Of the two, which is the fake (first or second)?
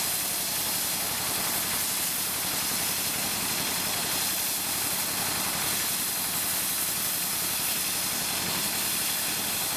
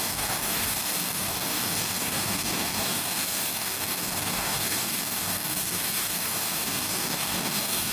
second